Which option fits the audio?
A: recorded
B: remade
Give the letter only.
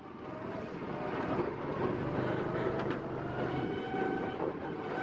A